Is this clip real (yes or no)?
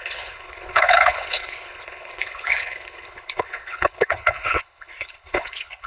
no